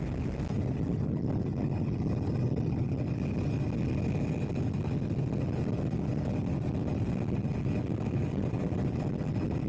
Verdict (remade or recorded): recorded